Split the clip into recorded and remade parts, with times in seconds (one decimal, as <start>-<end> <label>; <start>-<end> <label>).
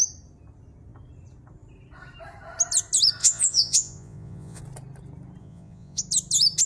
0.0-3.2 recorded; 3.2-4.6 remade; 4.6-5.4 recorded; 5.4-6.0 remade; 6.0-6.7 recorded